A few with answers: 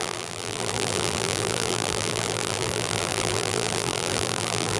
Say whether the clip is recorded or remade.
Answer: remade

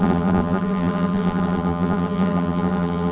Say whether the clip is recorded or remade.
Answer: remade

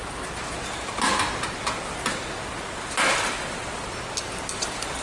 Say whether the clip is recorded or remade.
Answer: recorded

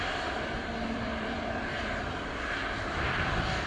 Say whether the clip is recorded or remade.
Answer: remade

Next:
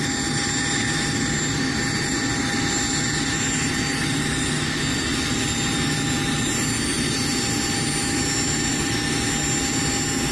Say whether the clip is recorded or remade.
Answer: recorded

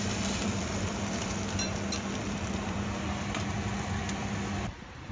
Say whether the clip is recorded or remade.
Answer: remade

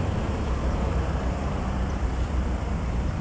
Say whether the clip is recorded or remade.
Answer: remade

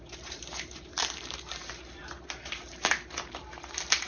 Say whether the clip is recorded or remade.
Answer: remade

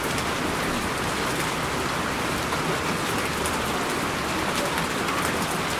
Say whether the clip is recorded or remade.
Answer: recorded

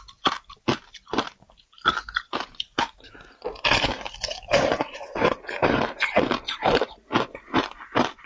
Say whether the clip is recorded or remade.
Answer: remade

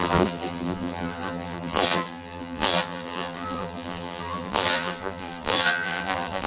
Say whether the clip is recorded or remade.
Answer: remade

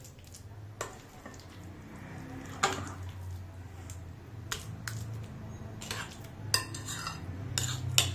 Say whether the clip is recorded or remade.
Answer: recorded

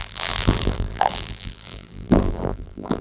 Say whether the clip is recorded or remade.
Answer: remade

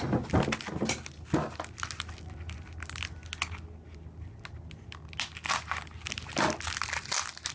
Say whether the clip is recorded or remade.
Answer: recorded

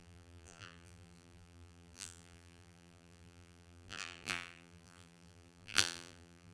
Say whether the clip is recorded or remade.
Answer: remade